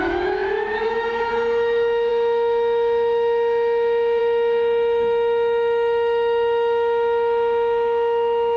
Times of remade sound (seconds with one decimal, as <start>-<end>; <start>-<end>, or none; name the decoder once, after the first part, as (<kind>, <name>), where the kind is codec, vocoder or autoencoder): 0.0-8.6 (autoencoder, DAC-VAE)